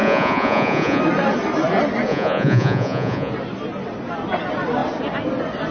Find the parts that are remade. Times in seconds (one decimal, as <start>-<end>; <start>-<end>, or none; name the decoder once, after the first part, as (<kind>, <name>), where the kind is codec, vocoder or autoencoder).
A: 0.0-1.0 (vocoder, Vocos); 2.1-3.3